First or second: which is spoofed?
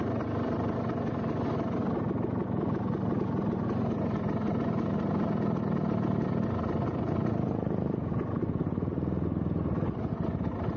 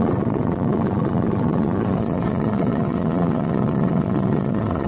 second